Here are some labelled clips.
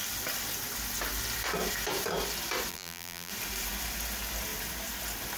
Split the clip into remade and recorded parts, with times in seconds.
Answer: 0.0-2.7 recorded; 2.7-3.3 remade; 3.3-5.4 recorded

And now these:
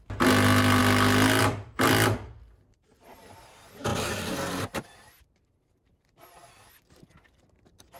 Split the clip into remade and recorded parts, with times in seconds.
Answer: 0.0-8.0 recorded